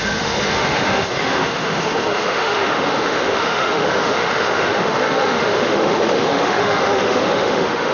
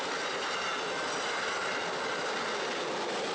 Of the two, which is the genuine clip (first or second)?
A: second